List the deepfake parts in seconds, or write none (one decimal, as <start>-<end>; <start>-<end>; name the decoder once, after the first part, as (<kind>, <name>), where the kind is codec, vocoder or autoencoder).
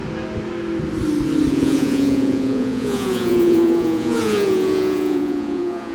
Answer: 1.5-5.9 (vocoder, Vocos)